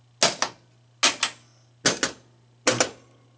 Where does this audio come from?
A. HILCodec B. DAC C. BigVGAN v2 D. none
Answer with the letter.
D